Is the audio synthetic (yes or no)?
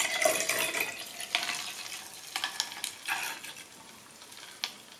no